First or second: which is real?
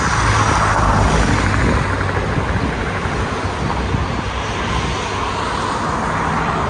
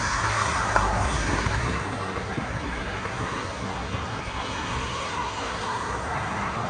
first